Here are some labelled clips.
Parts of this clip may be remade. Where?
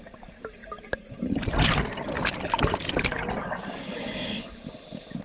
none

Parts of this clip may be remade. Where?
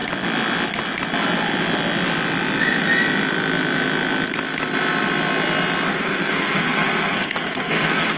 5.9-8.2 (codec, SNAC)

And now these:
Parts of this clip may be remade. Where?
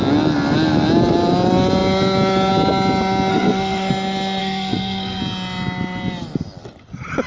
3.3-3.9 (codec, SNAC); 4.4-5.2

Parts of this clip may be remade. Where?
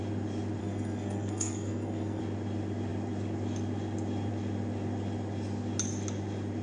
0.6-2.2 (codec, SNAC)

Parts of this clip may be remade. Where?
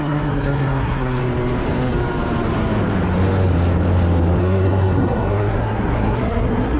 0.0-1.2 (codec, SNAC); 4.4-6.8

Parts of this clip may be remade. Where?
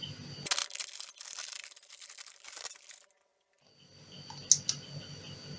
none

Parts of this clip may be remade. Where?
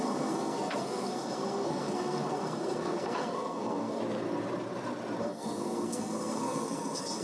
0.0-4.0 (codec, SNAC); 5.2-7.2